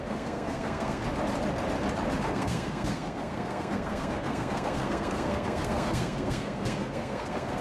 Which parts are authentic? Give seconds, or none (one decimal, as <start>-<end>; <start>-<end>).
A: 1.0-2.2